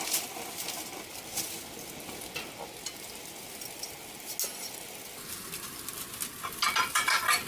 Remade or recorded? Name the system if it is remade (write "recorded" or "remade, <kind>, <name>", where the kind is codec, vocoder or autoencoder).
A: recorded